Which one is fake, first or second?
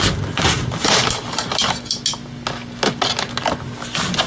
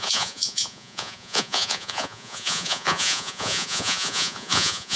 second